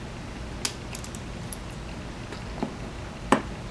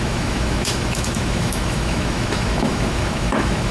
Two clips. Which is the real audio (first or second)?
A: first